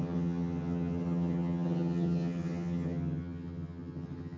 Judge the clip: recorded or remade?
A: remade